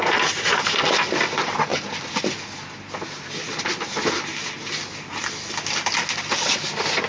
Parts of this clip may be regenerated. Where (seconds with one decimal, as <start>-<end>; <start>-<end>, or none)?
none